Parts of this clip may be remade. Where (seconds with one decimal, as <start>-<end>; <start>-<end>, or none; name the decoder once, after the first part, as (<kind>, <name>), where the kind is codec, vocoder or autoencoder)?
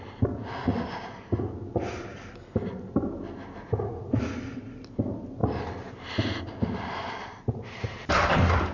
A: none